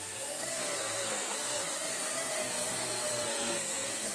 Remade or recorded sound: remade